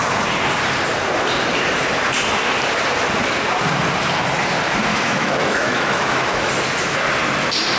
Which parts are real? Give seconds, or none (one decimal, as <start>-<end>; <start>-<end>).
0.0-4.9; 6.5-7.8